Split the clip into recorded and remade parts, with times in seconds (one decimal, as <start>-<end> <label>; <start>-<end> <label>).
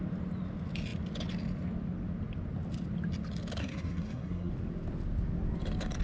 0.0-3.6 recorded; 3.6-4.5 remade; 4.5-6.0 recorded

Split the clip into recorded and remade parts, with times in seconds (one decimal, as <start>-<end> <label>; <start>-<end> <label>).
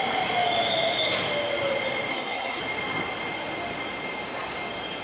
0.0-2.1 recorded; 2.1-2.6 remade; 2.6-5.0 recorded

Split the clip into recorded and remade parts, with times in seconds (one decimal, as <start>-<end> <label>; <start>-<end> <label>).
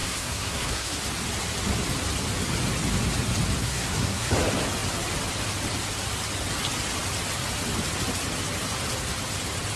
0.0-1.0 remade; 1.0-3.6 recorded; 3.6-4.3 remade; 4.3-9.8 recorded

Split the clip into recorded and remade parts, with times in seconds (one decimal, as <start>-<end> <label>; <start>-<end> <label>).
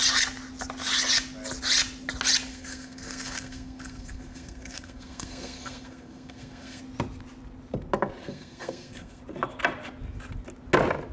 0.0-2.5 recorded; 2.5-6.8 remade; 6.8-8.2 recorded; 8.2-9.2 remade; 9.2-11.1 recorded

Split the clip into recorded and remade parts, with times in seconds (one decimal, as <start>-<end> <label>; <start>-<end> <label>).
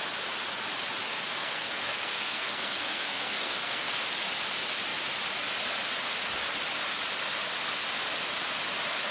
0.0-1.1 recorded; 1.1-3.9 remade; 3.9-9.1 recorded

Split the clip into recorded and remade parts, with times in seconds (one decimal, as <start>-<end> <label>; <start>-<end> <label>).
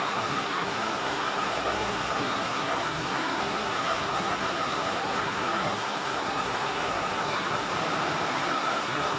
0.0-7.7 remade; 7.7-8.3 recorded; 8.3-9.2 remade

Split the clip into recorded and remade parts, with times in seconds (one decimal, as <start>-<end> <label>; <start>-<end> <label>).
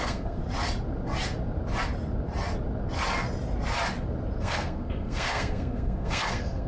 0.0-0.4 remade; 0.4-4.4 recorded; 4.4-6.7 remade